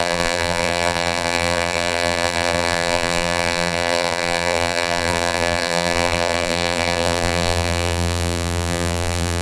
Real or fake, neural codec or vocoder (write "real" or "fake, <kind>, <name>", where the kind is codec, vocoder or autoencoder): fake, vocoder, BigVGAN v2